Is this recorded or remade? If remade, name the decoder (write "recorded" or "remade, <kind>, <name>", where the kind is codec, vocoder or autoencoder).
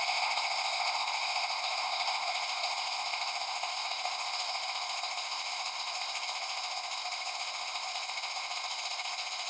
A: remade, codec, ZipCodec